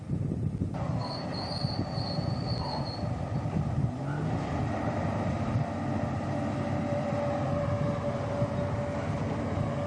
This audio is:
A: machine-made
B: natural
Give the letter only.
B